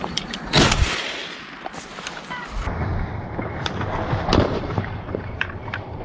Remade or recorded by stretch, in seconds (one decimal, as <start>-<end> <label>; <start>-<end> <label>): 0.0-1.2 remade; 1.2-4.4 recorded; 4.4-6.0 remade